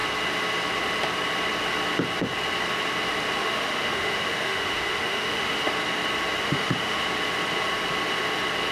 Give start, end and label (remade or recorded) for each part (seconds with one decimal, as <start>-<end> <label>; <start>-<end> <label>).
0.0-3.4 recorded; 3.4-5.7 remade; 5.7-6.4 recorded; 6.4-7.0 remade; 7.0-8.7 recorded